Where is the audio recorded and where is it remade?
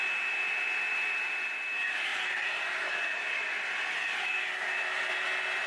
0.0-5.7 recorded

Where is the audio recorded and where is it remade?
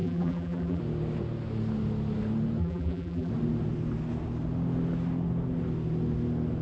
0.0-0.8 remade; 0.8-2.6 recorded; 2.6-3.3 remade; 3.3-6.6 recorded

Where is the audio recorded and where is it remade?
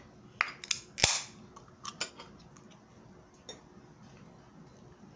0.0-1.0 recorded; 1.0-2.1 remade; 2.1-5.2 recorded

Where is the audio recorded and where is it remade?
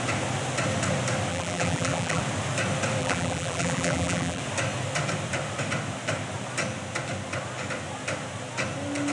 0.0-1.3 recorded; 1.3-2.2 remade; 2.2-3.0 recorded; 3.0-4.4 remade; 4.4-9.1 recorded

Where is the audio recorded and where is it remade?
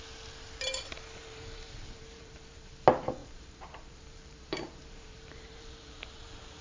0.0-1.2 recorded; 1.2-2.7 remade; 2.7-3.2 recorded; 3.2-6.6 remade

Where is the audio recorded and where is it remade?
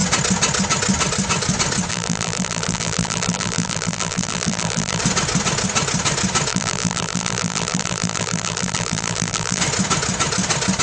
0.0-1.9 recorded; 1.9-5.0 remade; 5.0-6.5 recorded; 6.5-9.6 remade; 9.6-10.8 recorded